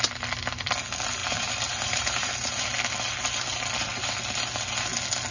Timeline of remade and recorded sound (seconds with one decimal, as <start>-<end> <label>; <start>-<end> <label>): 0.0-1.2 recorded; 1.2-2.5 remade; 2.5-5.3 recorded